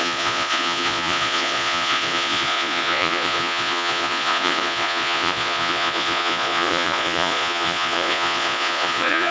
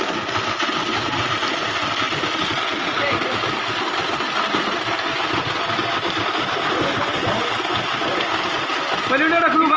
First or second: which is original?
second